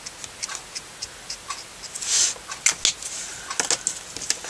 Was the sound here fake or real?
real